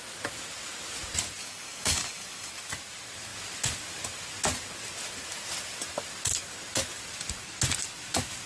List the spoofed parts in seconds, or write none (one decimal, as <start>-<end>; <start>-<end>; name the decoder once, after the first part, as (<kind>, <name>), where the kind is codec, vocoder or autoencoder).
1.4-2.5 (codec, DAC)